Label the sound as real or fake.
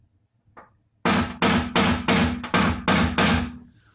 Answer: real